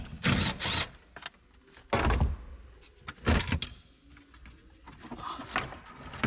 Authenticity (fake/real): real